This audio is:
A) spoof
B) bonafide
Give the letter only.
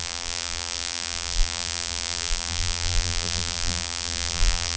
A